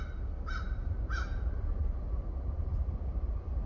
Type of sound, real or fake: real